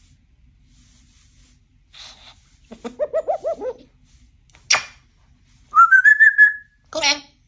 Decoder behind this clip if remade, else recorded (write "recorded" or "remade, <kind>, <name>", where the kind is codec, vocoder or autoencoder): recorded